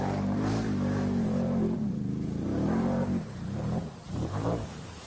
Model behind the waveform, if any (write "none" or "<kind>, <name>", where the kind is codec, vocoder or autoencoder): vocoder, BigVGAN v2